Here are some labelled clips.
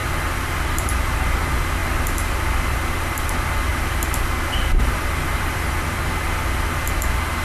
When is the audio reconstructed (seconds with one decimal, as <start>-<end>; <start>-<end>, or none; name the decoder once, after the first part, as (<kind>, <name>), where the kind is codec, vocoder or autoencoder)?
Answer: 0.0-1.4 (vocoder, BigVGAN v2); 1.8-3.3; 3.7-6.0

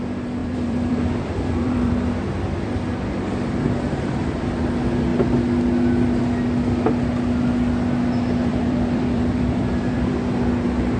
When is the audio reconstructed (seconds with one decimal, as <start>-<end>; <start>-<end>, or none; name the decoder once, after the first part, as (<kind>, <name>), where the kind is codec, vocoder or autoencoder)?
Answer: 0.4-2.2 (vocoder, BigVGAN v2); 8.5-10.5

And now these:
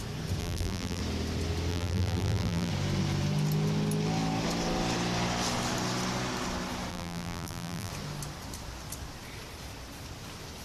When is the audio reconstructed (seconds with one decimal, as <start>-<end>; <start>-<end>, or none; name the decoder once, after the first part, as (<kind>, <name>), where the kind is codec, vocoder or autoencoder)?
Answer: 0.4-1.0 (vocoder, BigVGAN v2); 1.7-2.7; 6.9-7.9

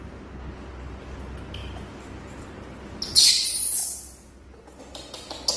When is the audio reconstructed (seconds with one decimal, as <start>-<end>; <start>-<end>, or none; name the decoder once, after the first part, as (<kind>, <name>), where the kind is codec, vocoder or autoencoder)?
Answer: 3.8-4.8 (vocoder, BigVGAN v2)

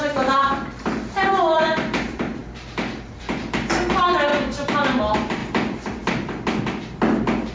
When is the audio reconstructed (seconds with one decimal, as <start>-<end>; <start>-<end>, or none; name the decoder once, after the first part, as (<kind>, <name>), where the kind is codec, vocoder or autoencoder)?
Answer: 0.0-7.5 (vocoder, BigVGAN v2)